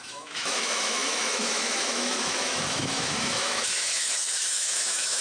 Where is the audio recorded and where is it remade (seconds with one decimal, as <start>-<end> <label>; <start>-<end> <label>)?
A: 0.0-5.2 remade